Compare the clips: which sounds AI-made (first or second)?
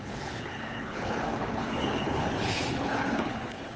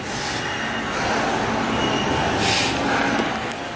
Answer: first